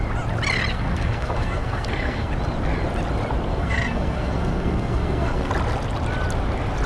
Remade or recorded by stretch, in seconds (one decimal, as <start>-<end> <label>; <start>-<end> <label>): 0.0-0.7 recorded; 0.7-2.3 remade; 2.3-3.5 recorded; 3.5-5.5 remade; 5.5-6.9 recorded